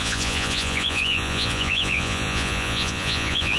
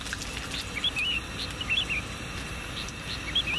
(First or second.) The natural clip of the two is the second